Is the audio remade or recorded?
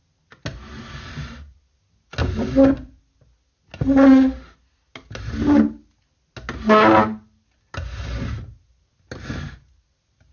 recorded